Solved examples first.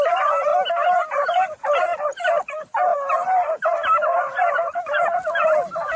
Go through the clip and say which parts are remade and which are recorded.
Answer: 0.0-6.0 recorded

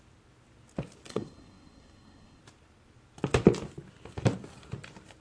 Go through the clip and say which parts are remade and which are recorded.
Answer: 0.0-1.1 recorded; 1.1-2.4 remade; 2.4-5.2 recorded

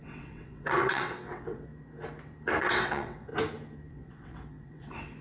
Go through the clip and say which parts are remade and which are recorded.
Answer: 0.0-1.7 remade; 1.7-2.6 recorded; 2.6-3.3 remade; 3.3-3.9 recorded; 3.9-5.2 remade

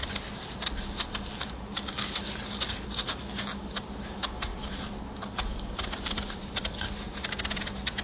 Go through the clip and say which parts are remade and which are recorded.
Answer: 0.0-4.5 recorded; 4.5-6.6 remade; 6.6-8.0 recorded